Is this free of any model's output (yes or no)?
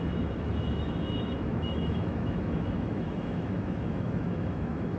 no